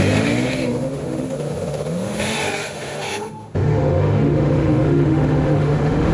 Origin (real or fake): fake